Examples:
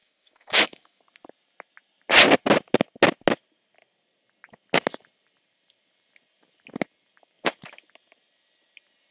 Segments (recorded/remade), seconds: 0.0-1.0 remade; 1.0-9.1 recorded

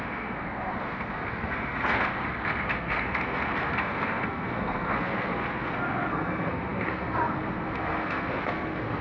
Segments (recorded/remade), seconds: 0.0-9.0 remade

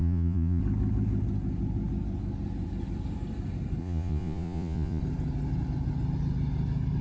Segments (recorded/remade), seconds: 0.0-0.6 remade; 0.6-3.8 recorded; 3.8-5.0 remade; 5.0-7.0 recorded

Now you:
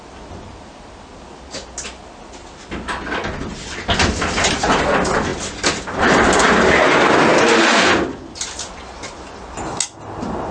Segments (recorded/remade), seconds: 0.0-10.5 recorded

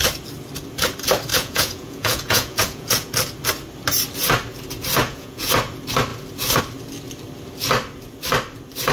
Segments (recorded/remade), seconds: 0.0-1.3 recorded; 1.3-3.1 remade; 3.1-5.0 recorded; 5.0-5.5 remade; 5.5-8.9 recorded

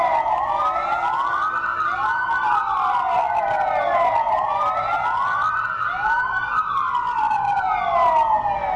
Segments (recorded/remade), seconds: 0.0-8.8 recorded

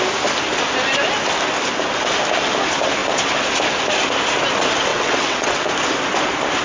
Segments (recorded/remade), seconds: 0.0-4.9 recorded; 4.9-5.7 remade; 5.7-6.6 recorded